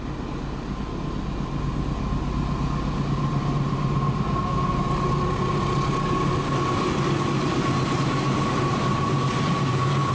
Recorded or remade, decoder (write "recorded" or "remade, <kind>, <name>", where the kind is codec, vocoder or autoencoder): recorded